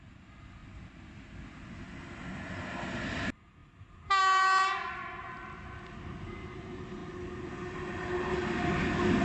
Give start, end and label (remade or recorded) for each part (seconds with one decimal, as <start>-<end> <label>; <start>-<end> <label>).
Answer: 0.0-9.2 recorded